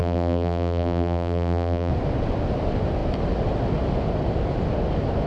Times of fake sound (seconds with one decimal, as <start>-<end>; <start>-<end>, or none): 0.0-1.9